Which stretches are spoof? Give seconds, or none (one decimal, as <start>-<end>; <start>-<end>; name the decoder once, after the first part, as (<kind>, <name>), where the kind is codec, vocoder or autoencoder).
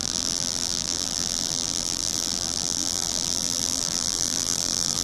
0.0-5.0 (vocoder, BigVGAN v2)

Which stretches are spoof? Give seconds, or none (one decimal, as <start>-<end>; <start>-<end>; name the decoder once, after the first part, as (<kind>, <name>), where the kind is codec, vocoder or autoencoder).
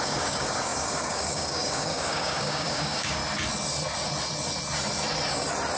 0.0-3.2 (codec, DAC)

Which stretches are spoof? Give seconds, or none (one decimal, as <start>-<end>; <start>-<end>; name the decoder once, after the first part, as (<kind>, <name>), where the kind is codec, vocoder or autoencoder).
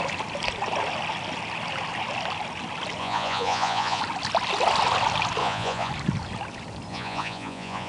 3.0-4.0 (vocoder, Vocos); 5.4-5.9; 6.9-7.9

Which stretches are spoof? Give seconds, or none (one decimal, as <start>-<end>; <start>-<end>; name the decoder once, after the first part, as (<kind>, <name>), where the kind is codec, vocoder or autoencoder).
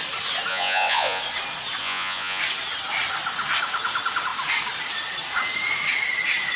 0.5-1.2 (vocoder, Vocos); 1.8-2.4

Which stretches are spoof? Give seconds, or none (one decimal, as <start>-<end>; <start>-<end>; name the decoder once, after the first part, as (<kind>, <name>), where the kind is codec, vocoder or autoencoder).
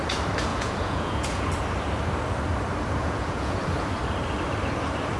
0.5-1.5 (vocoder, Vocos); 3.0-3.6